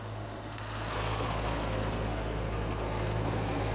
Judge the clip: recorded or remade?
remade